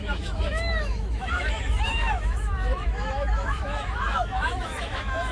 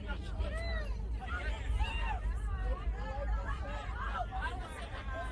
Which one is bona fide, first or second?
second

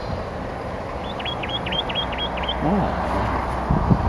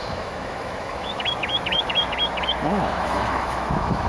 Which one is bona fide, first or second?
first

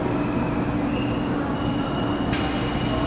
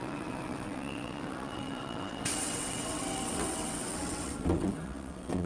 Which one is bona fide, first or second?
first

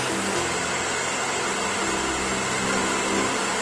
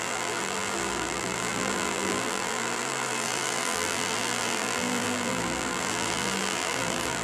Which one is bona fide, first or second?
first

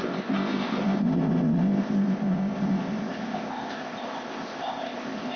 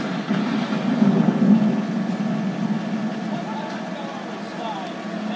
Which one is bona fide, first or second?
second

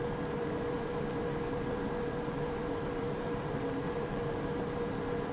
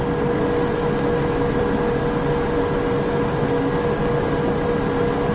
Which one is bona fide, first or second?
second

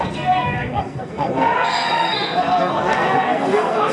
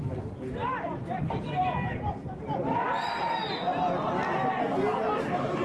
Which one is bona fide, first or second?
second